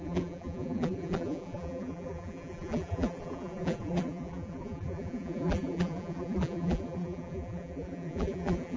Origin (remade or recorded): remade